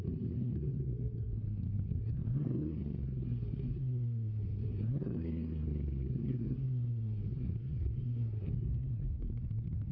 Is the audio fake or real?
fake